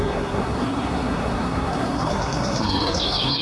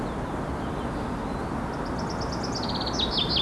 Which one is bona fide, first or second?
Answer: second